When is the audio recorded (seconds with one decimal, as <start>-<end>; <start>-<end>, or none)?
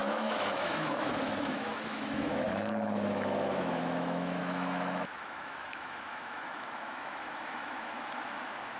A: none